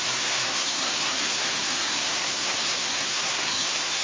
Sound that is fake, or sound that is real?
fake